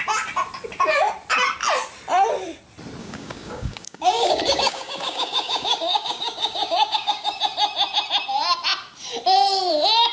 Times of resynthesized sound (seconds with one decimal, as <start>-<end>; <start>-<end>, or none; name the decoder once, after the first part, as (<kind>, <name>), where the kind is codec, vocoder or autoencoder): 3.0-7.4 (codec, DAC)